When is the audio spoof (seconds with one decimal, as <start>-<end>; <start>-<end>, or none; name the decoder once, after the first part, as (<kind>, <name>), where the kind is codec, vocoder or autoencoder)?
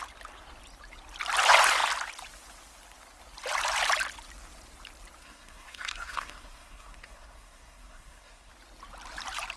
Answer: 5.2-8.5 (codec, SNAC)